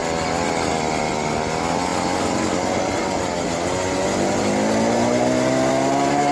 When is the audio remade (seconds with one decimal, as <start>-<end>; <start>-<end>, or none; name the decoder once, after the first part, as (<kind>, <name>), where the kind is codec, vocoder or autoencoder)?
none